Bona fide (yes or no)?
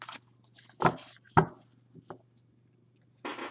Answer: yes